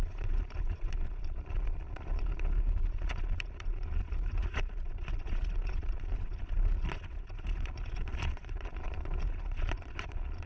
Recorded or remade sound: remade